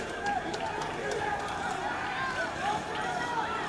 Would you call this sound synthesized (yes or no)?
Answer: yes